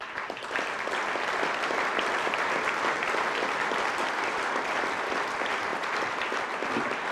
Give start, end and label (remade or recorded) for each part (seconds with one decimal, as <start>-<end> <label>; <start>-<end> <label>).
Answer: 0.0-7.1 recorded